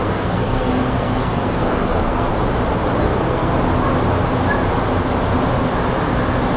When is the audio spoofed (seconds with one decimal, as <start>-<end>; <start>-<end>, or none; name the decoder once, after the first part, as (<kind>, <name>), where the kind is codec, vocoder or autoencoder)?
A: 0.0-2.3 (codec, SNAC); 3.0-3.5